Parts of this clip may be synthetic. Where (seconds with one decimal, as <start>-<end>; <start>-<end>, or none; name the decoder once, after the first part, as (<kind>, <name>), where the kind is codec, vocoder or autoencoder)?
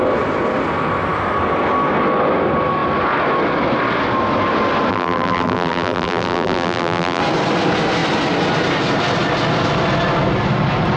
4.9-7.2 (vocoder, BigVGAN v2)